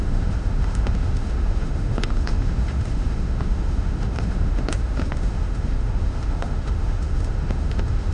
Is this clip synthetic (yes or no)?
yes